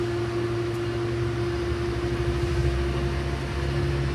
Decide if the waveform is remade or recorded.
recorded